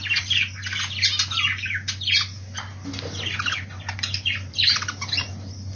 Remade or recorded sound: recorded